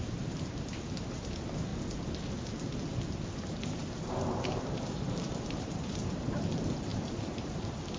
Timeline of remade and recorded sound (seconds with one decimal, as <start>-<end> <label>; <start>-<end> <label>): 0.0-1.7 remade; 1.7-3.4 recorded; 3.4-8.0 remade